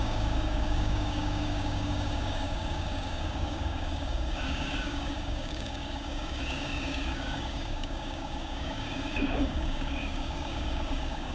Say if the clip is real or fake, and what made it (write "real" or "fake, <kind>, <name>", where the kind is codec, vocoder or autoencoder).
fake, codec, DAC